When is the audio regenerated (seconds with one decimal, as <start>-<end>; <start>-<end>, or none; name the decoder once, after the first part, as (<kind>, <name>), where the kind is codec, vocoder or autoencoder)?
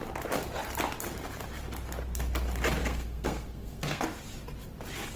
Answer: 2.8-4.0 (codec, SNAC)